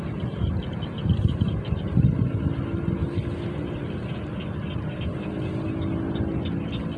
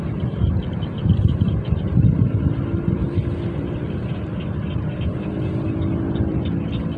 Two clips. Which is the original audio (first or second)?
first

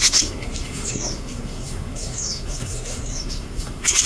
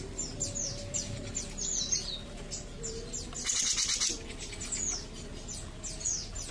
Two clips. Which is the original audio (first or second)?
second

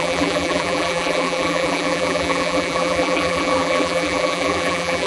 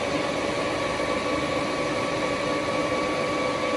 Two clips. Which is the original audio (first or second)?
second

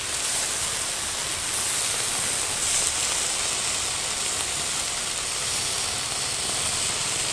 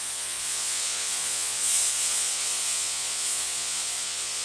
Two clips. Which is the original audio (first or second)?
first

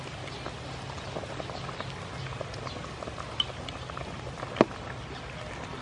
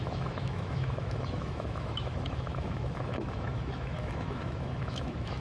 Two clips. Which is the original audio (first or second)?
first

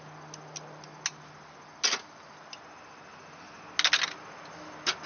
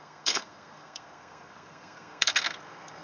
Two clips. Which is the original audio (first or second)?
first